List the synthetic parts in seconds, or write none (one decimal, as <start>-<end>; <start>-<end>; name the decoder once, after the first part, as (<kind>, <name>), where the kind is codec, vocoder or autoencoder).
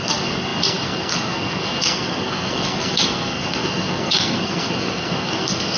0.0-5.8 (codec, SNAC)